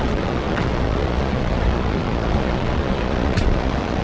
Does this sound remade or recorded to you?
remade